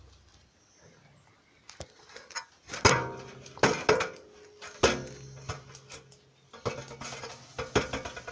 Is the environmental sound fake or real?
real